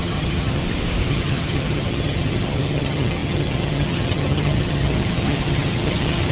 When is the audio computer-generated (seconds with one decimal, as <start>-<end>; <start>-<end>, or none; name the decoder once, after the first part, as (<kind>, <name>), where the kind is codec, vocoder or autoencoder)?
0.0-0.6 (vocoder, HiFi-GAN); 1.1-6.3